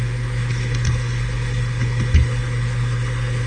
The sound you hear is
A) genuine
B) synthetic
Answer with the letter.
B